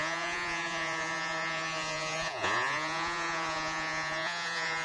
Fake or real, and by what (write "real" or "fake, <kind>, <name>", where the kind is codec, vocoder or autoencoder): fake, vocoder, Vocos